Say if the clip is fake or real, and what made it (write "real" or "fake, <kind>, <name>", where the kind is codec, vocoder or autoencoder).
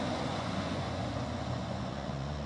fake, vocoder, Vocos